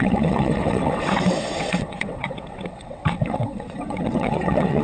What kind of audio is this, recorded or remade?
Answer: remade